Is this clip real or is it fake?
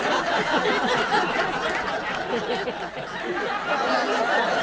real